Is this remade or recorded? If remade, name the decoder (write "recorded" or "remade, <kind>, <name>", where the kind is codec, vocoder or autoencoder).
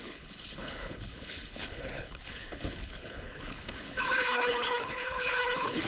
remade, codec, HILCodec